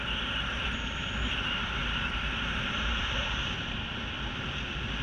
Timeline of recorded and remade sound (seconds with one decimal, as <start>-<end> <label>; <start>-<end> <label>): 0.0-1.8 recorded; 1.8-3.9 remade; 3.9-5.0 recorded